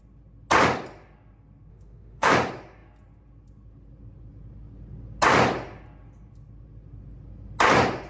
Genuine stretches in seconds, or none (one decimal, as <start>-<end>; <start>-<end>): 0.0-1.7; 2.3-8.1